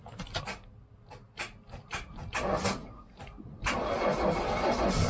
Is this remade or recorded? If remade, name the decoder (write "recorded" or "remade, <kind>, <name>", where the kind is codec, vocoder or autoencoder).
recorded